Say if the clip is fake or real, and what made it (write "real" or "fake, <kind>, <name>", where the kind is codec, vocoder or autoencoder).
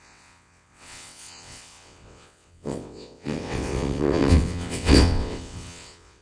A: fake, vocoder, WaveNeXt